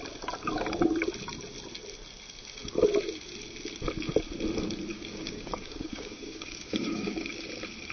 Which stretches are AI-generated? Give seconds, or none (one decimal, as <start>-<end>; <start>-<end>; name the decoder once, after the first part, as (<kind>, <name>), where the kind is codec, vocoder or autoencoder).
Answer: 4.9-7.3 (codec, DAC)